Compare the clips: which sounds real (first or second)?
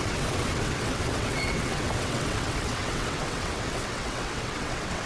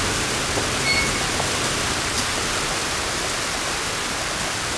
second